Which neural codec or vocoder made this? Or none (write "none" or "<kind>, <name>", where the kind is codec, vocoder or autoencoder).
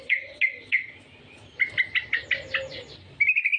none